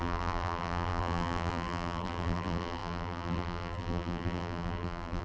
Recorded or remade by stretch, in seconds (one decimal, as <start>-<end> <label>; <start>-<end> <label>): 0.0-5.2 remade